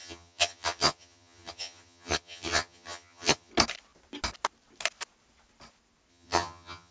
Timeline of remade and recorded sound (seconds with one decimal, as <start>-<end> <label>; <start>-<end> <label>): 0.0-3.5 remade; 3.5-6.1 recorded; 6.1-6.9 remade